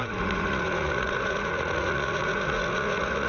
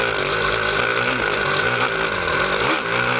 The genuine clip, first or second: second